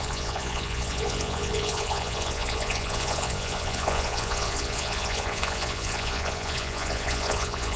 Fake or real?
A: fake